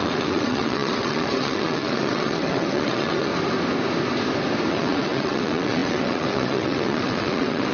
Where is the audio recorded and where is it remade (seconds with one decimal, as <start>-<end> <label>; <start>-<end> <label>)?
0.0-3.3 remade; 3.3-4.7 recorded; 4.7-7.7 remade